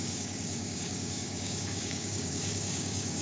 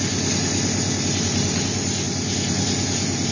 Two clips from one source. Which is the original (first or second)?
second